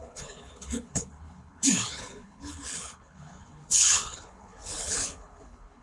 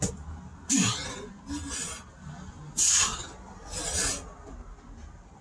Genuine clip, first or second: second